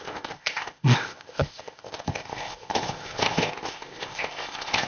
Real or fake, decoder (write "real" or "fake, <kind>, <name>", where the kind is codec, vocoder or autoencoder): fake, codec, ZipCodec